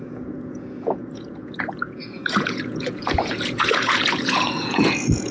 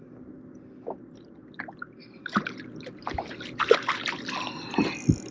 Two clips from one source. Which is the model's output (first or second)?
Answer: first